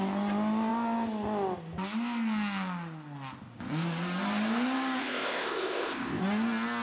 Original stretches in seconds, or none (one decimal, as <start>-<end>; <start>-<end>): 0.0-5.0; 6.2-6.8